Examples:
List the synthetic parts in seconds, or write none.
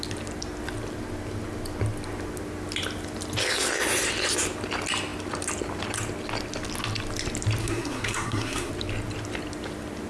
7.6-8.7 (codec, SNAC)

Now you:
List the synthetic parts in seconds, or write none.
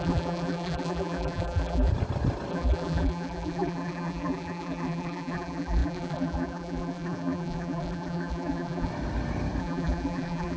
0.0-1.9 (vocoder, BigVGAN v2); 2.5-8.9; 9.6-10.6